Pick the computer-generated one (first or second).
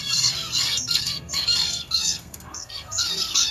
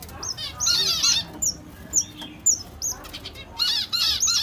first